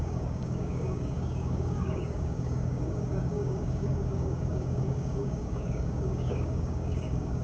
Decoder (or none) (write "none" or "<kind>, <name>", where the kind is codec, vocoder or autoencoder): codec, DAC